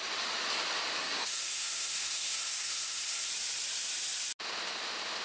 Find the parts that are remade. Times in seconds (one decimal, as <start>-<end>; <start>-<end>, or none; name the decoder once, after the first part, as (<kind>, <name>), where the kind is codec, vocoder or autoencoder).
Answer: 1.0-3.3 (codec, SNAC)